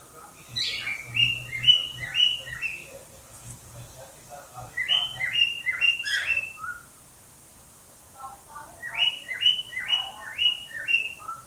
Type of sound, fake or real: fake